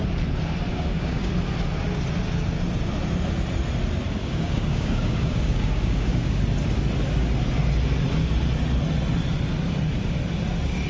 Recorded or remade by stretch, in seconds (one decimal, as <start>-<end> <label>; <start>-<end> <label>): 0.0-0.7 recorded; 0.7-1.3 remade; 1.3-4.2 recorded; 4.2-6.4 remade; 6.4-10.9 recorded